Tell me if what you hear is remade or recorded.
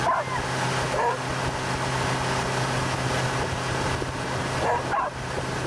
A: recorded